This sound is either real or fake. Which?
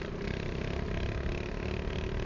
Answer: real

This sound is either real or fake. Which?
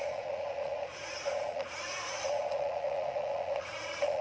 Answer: fake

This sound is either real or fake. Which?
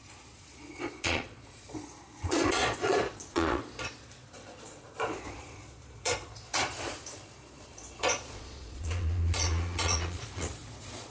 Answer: fake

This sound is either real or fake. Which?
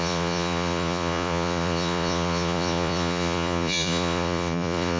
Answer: fake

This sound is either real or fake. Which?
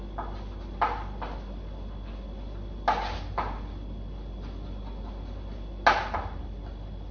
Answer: real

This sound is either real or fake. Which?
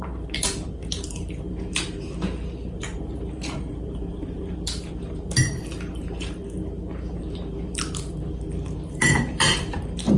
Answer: fake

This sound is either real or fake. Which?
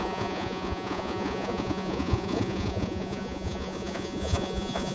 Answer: fake